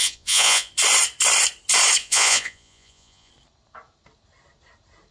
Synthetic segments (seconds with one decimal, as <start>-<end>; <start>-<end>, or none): 0.0-0.7; 2.0-3.3